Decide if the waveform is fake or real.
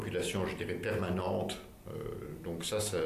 real